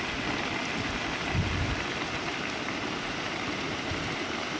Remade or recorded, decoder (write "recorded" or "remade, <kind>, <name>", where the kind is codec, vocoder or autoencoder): recorded